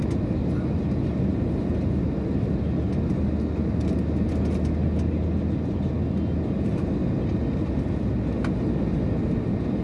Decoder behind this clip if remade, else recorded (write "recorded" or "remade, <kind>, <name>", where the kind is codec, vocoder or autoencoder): recorded